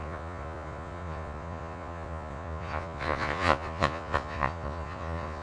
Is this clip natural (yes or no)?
no